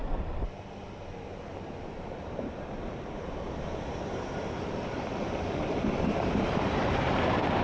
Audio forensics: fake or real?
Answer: fake